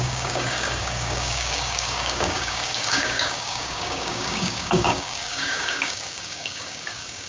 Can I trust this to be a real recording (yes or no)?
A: no